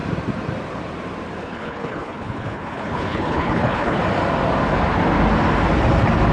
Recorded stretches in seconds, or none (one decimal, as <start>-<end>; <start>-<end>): 0.0-1.4; 4.0-6.3